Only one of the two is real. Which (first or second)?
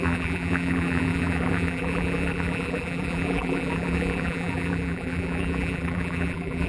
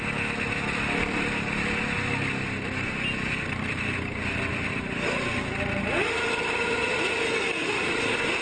second